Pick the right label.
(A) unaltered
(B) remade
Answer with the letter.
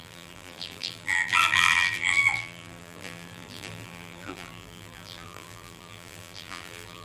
B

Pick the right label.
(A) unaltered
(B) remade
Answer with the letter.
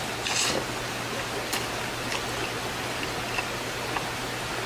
A